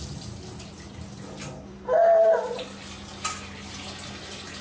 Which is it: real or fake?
real